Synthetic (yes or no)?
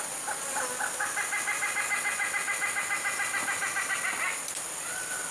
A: no